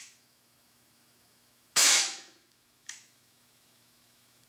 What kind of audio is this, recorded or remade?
remade